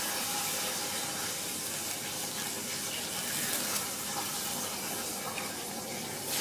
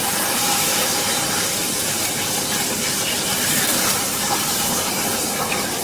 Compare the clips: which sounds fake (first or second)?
second